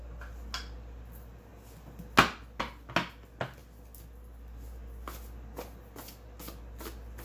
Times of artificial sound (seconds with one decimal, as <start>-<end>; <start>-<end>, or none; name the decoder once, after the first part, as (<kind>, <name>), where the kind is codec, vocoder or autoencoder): none